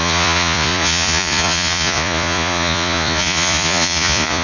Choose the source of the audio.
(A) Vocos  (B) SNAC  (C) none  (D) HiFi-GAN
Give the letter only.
A